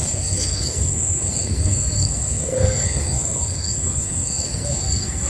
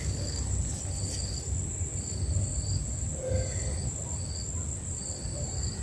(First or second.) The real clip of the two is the second